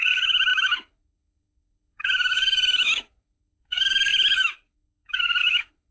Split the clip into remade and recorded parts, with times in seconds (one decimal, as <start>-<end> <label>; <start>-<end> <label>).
0.0-5.9 remade